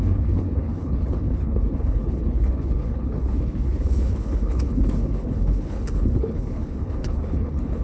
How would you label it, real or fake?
fake